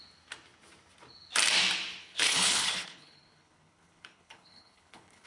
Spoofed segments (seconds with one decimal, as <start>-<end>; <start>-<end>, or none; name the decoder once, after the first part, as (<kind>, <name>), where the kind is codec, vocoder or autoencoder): 2.0-5.3 (codec, HILCodec)